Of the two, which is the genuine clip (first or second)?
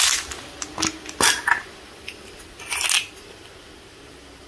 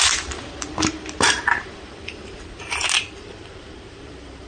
first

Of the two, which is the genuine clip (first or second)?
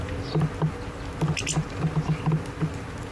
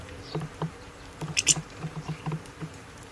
first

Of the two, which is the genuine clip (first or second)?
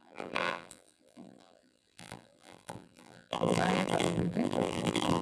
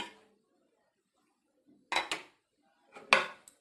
second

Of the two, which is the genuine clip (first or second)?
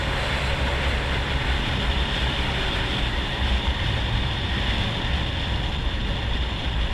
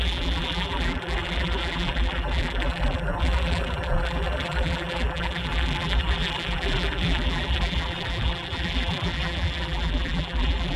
first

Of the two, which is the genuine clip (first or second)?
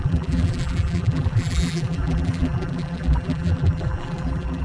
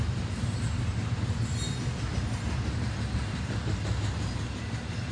second